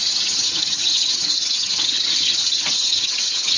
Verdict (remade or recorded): remade